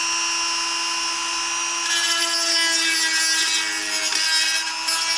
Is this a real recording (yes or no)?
yes